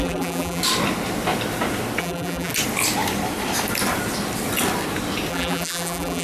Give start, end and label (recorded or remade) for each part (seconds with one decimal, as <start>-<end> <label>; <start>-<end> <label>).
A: 0.0-0.6 remade; 0.6-2.0 recorded; 2.0-2.5 remade; 2.5-5.3 recorded; 5.3-6.2 remade